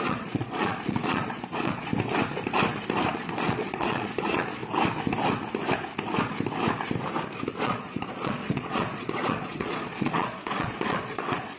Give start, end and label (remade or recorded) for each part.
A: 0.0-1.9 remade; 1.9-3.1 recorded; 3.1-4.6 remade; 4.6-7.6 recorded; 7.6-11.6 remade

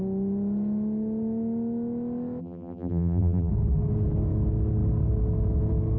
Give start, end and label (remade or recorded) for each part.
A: 0.0-2.4 recorded; 2.4-3.5 remade; 3.5-6.0 recorded

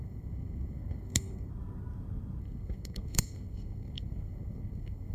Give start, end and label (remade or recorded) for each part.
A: 0.0-1.5 remade; 1.5-2.4 recorded; 2.4-5.1 remade